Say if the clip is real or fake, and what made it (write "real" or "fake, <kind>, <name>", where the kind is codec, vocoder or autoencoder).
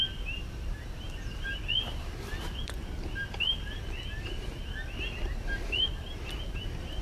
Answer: real